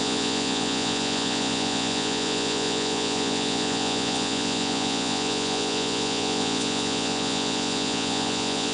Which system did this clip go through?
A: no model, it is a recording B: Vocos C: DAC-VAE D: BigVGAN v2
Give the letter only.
B